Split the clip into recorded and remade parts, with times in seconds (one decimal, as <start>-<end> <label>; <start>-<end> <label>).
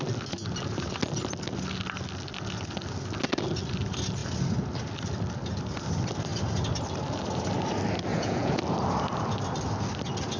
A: 0.0-8.1 recorded; 8.1-8.6 remade; 8.6-10.4 recorded